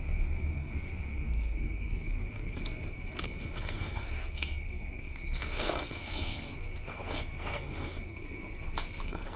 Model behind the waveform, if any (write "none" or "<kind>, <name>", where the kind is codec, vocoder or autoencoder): codec, SNAC